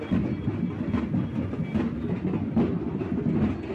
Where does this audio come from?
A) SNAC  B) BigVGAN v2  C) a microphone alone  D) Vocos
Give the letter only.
C